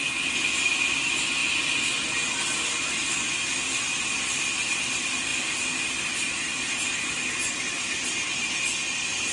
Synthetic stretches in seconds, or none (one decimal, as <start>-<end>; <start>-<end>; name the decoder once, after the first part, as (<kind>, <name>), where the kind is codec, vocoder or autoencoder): none